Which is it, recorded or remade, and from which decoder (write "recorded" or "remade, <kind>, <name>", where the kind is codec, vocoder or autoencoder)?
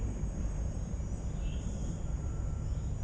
recorded